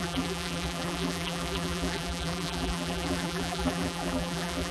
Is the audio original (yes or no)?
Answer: no